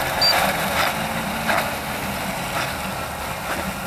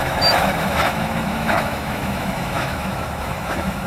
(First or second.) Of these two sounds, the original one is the first